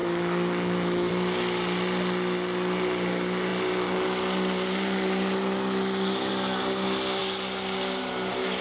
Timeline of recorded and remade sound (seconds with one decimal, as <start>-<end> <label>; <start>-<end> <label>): 0.0-1.1 remade; 1.1-8.6 recorded